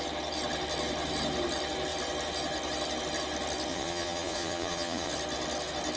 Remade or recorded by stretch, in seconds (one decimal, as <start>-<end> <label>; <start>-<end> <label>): 0.0-3.7 recorded; 3.7-5.1 remade; 5.1-6.0 recorded